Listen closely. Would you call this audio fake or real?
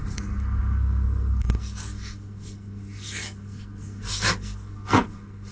fake